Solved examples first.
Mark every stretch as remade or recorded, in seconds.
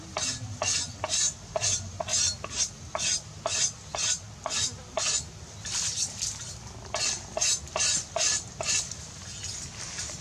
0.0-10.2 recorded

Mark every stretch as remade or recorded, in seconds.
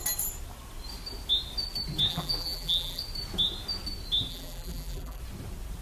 0.0-2.1 recorded; 2.1-3.0 remade; 3.0-4.3 recorded; 4.3-5.2 remade; 5.2-5.8 recorded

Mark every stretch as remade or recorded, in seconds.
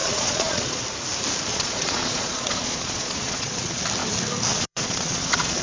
0.0-0.8 remade; 0.8-1.5 recorded; 1.5-3.8 remade; 3.8-4.5 recorded; 4.5-5.6 remade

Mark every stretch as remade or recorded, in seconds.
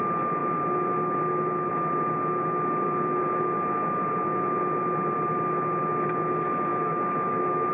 0.0-6.7 recorded; 6.7-7.7 remade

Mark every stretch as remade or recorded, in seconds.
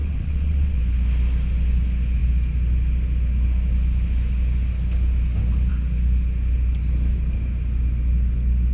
0.0-0.8 remade; 0.8-8.7 recorded